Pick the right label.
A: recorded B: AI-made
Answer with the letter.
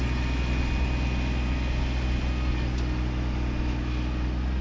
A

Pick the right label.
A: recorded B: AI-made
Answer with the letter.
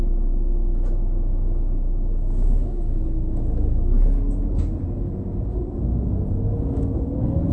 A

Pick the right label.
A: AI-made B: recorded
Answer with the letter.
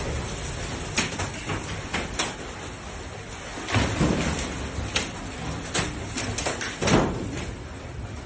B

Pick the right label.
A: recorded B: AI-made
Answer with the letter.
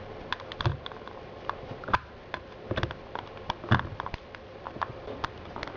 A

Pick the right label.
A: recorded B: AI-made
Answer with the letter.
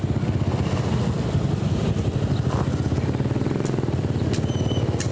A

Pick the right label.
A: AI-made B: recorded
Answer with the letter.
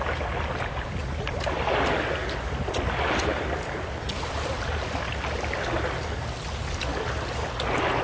B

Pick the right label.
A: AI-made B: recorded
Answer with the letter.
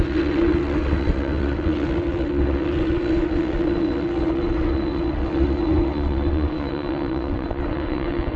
A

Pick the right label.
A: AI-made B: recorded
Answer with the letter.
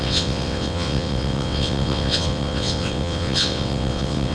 A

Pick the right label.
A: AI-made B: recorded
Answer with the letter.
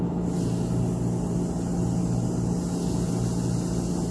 B